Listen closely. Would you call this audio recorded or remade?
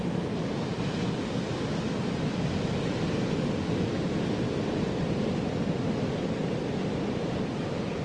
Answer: recorded